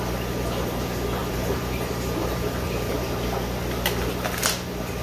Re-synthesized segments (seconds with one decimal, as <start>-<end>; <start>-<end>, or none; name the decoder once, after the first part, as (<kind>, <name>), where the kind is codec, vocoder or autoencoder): 1.2-2.9 (vocoder, BigVGAN v2)

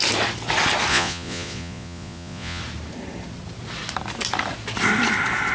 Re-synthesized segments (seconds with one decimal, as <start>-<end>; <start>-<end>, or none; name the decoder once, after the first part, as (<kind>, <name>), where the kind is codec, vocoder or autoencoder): 0.9-2.6 (vocoder, Vocos)

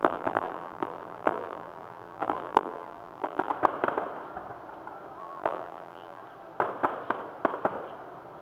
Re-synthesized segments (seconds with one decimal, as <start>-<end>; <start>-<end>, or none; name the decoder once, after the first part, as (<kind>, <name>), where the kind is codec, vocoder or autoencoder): 0.0-3.5 (vocoder, BigVGAN v2); 5.2-6.2

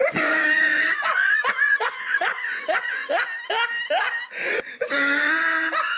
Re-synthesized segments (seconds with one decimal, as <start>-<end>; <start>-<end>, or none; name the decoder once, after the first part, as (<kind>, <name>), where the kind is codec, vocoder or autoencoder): 0.0-3.0 (vocoder, Vocos); 4.3-6.0

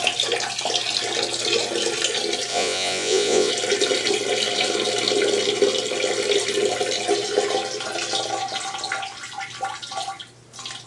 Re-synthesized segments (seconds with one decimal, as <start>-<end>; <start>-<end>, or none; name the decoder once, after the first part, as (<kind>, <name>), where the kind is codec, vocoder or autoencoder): 2.5-3.5 (vocoder, Vocos)

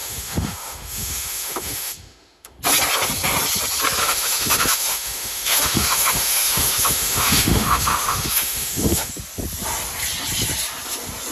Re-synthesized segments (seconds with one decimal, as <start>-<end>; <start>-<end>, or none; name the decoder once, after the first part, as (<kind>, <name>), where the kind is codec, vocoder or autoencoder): 0.0-2.6 (autoencoder, DAC-VAE); 4.0-9.1

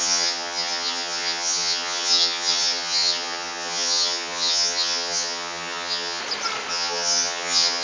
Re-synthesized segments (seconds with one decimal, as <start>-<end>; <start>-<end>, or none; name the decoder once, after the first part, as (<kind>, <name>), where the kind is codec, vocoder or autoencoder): 0.0-6.2 (vocoder, HiFi-GAN); 6.7-7.8